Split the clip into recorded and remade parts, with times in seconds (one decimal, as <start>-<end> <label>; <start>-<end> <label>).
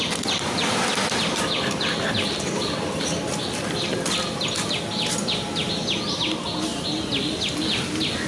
0.0-8.3 recorded